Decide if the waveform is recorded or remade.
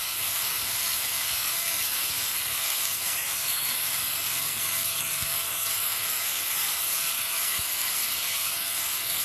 remade